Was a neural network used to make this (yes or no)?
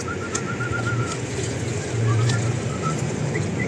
yes